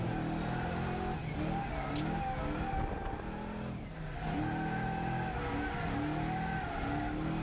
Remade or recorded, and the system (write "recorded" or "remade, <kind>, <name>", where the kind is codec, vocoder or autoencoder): recorded